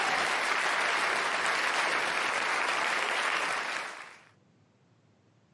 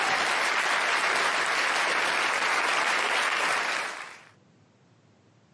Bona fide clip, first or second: second